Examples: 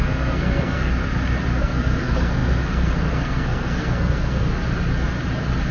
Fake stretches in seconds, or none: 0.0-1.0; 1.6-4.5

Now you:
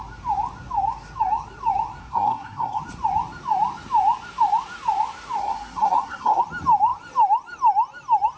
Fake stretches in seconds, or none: 2.0-2.8; 5.4-6.4

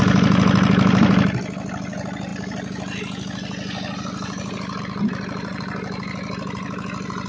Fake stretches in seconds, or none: none

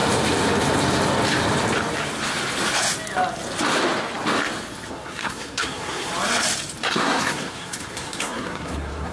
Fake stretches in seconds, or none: 4.9-6.1; 6.9-9.1

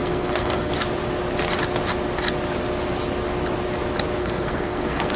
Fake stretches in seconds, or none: 0.0-0.7; 4.2-5.2

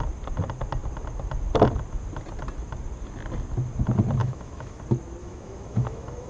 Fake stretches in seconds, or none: 4.2-4.8; 5.2-6.3